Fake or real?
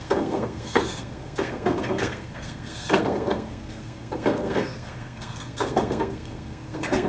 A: fake